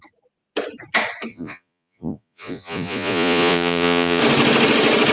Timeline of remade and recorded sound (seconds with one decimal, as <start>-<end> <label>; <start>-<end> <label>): 0.0-1.3 recorded; 1.3-4.2 remade; 4.2-5.1 recorded